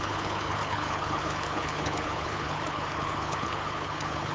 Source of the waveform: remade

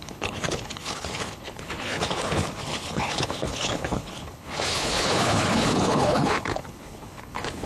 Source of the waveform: remade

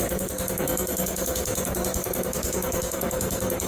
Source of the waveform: remade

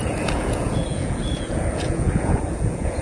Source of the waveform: remade